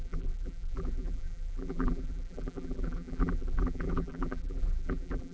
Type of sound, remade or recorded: remade